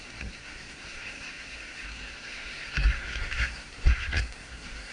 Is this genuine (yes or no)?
no